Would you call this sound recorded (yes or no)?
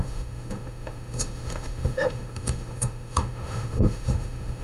no